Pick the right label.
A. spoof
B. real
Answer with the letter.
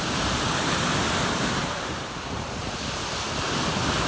B